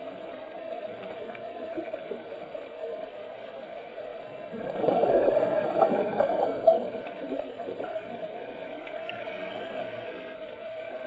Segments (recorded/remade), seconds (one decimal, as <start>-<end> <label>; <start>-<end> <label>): 0.0-11.1 remade

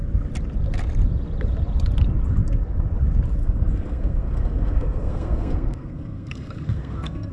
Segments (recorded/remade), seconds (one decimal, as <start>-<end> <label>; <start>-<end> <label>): 0.0-3.4 recorded; 3.4-7.3 remade

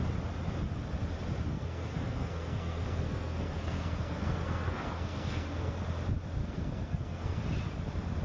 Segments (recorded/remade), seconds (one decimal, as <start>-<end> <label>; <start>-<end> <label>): 0.0-1.5 recorded; 1.5-5.8 remade; 5.8-6.4 recorded; 6.4-7.4 remade; 7.4-8.2 recorded

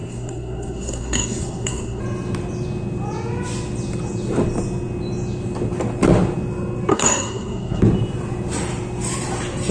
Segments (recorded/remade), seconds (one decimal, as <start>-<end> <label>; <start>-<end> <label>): 0.0-2.0 remade; 2.0-6.9 recorded; 6.9-7.8 remade; 7.8-9.7 recorded